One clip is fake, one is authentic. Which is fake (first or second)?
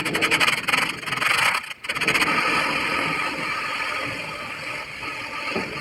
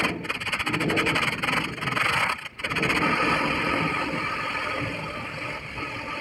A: second